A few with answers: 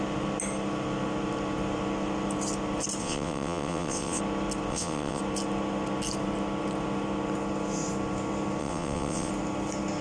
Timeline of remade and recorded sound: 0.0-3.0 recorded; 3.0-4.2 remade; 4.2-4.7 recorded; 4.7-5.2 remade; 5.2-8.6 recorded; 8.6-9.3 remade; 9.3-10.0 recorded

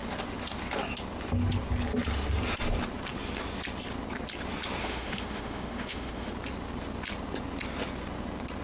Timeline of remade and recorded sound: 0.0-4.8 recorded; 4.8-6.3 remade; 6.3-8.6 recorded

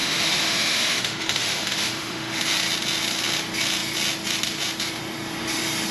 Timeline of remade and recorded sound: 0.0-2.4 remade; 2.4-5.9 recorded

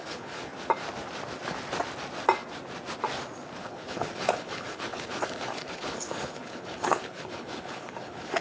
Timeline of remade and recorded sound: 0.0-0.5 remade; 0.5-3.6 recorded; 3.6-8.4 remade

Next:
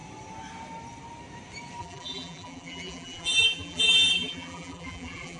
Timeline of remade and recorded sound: 0.0-1.8 recorded; 1.8-5.4 remade